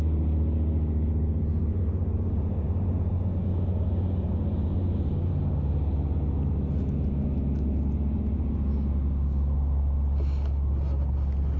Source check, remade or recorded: recorded